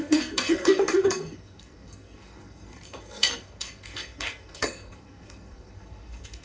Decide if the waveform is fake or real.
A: fake